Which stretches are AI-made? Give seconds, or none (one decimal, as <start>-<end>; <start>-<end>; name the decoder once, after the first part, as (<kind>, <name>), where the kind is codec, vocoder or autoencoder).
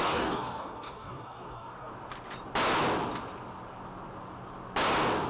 0.0-1.9 (codec, DAC)